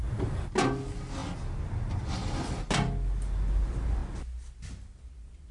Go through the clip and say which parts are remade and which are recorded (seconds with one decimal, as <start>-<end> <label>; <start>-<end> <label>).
0.0-5.5 recorded